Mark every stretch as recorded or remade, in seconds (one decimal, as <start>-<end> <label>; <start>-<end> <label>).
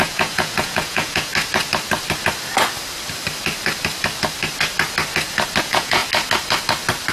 0.0-1.3 remade; 1.3-5.6 recorded; 5.6-6.0 remade; 6.0-7.1 recorded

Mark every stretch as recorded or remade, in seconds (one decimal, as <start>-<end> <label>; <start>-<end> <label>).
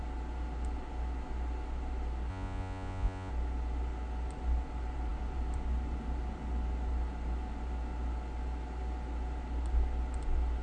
0.0-2.3 recorded; 2.3-3.3 remade; 3.3-10.6 recorded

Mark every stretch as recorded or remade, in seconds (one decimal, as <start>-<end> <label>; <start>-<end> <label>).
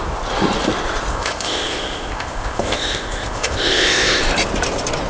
0.0-1.1 recorded; 1.1-4.2 remade; 4.2-5.1 recorded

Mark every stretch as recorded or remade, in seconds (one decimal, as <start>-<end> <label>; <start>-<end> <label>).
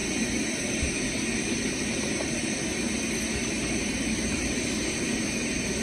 0.0-3.5 recorded; 3.5-5.8 remade